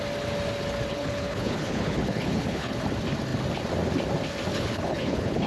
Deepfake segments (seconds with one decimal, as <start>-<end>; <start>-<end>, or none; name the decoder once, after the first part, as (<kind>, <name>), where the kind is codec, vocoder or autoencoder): 0.9-2.8 (codec, HILCodec); 4.5-5.5